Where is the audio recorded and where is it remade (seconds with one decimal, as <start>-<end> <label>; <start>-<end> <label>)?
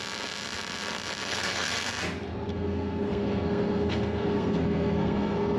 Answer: 0.0-1.3 recorded; 1.3-1.9 remade; 1.9-2.5 recorded; 2.5-5.6 remade